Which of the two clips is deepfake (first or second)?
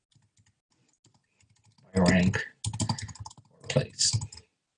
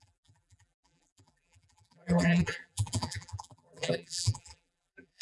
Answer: second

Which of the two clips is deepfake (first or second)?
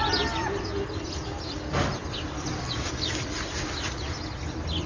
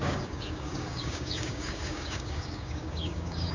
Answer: second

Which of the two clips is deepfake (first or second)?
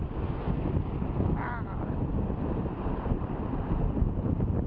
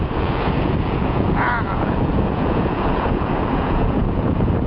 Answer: second